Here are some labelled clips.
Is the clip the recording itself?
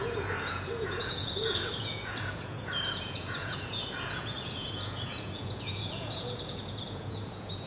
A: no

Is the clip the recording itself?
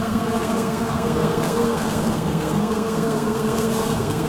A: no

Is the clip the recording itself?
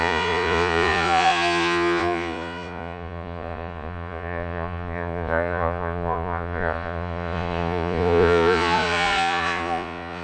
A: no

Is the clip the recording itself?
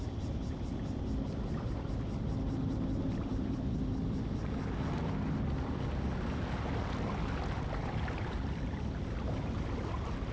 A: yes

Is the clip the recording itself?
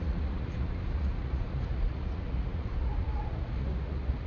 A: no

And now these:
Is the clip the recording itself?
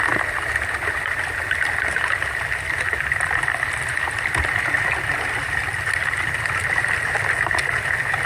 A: yes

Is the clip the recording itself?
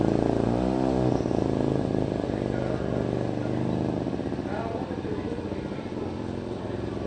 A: yes